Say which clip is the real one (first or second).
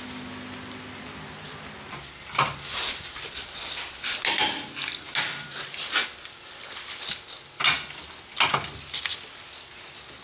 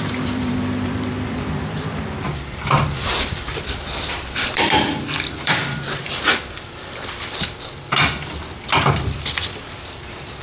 first